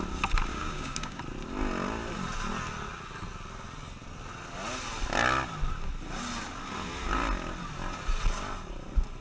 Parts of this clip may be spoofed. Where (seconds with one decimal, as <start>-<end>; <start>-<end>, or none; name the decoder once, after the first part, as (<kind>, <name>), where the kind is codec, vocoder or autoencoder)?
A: 0.5-1.2 (codec, DAC)